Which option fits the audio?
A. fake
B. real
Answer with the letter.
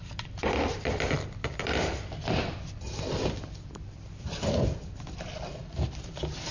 A